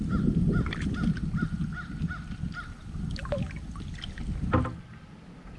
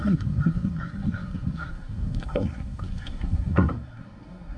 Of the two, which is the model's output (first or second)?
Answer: second